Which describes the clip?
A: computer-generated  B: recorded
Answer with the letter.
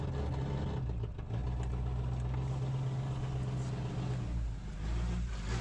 B